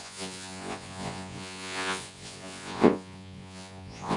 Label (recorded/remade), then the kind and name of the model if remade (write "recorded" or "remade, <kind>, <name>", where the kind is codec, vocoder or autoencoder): remade, vocoder, Vocos